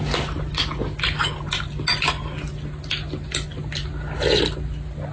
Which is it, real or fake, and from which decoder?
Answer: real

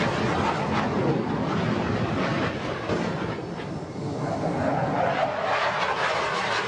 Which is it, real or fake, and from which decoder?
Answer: fake, vocoder, BigVGAN v2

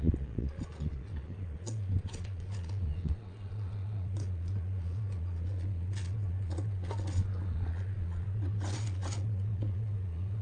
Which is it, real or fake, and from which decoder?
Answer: fake, vocoder, Vocos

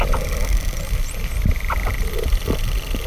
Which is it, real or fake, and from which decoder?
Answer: real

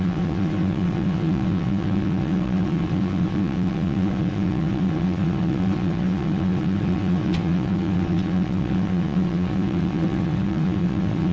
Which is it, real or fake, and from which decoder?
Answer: fake, vocoder, WaveNeXt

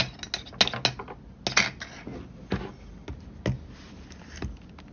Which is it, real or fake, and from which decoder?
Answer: real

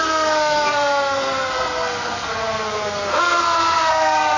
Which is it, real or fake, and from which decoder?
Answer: fake, codec, SNAC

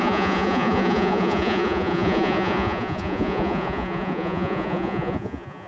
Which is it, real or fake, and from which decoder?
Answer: fake, vocoder, Vocos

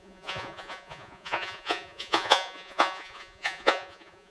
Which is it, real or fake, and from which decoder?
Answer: fake, vocoder, Vocos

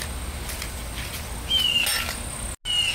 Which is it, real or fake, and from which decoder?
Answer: real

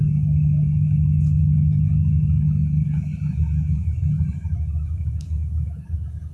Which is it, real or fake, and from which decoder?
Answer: fake, autoencoder, DAC-VAE